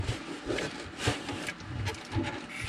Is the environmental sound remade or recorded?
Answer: recorded